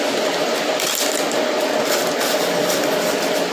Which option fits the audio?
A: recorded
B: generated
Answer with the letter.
A